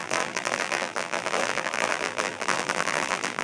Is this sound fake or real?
fake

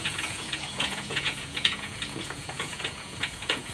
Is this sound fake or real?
fake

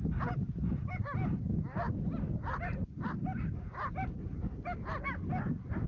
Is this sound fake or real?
real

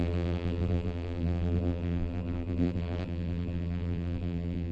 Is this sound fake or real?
fake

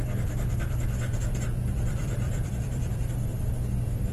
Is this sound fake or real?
fake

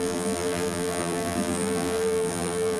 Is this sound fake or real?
fake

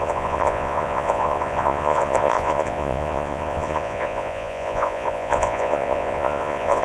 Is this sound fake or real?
fake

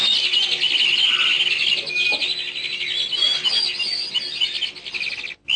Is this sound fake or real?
real